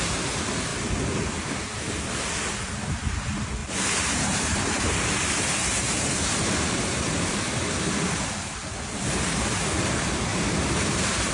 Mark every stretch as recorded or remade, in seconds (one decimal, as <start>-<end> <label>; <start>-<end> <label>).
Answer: 0.0-3.6 recorded; 3.6-7.2 remade; 7.2-10.3 recorded; 10.3-11.3 remade